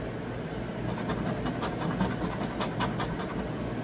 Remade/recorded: recorded